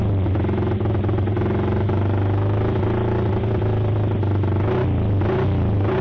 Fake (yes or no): no